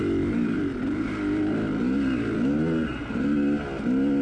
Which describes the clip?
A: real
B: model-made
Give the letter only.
A